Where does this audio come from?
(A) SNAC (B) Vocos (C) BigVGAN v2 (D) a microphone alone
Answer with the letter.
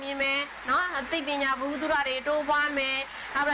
D